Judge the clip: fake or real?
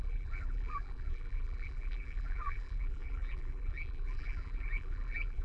fake